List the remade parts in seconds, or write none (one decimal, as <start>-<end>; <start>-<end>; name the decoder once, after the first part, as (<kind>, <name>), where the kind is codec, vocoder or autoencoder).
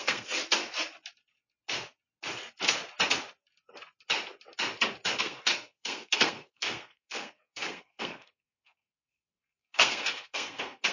0.0-0.4 (codec, SNAC); 5.2-10.9